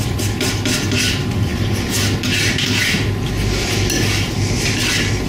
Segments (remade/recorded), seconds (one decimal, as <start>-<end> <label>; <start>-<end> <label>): 0.0-5.3 recorded